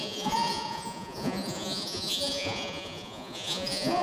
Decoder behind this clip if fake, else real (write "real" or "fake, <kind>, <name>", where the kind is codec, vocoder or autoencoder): fake, vocoder, Vocos